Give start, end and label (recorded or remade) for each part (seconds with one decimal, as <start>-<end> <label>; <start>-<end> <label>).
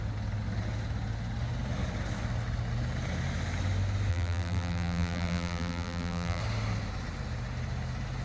0.0-4.1 recorded; 4.1-6.4 remade; 6.4-8.2 recorded